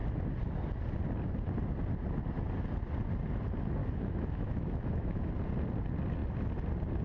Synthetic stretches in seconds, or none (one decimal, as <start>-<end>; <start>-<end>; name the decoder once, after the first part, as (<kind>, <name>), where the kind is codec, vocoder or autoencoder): 3.8-5.3 (autoencoder, DAC-VAE)